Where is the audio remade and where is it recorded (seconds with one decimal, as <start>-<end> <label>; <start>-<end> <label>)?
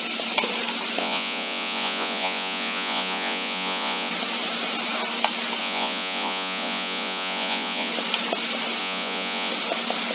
0.0-1.0 recorded; 1.0-4.1 remade; 4.1-5.6 recorded; 5.6-7.9 remade; 7.9-8.8 recorded; 8.8-9.5 remade; 9.5-10.1 recorded